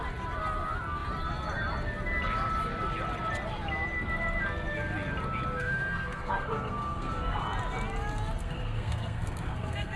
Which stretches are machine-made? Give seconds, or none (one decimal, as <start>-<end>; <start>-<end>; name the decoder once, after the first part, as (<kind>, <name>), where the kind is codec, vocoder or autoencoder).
5.6-7.4 (codec, SNAC); 8.4-10.0